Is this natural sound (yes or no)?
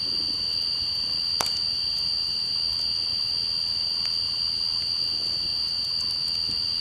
yes